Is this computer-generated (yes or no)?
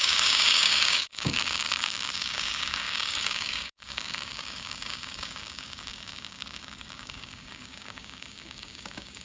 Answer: yes